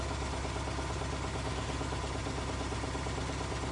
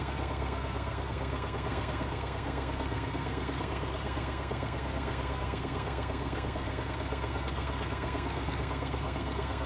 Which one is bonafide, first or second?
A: first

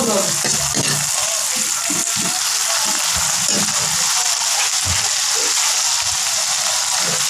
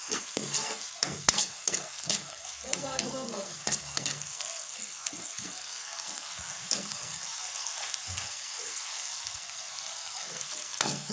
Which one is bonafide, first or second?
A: first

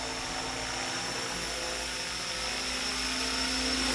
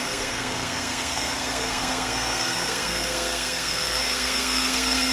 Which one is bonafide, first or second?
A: first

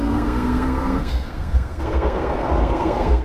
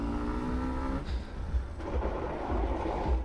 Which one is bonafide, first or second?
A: second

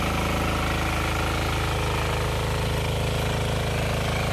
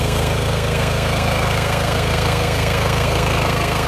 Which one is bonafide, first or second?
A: first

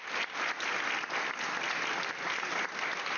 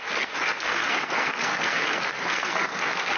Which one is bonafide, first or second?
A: first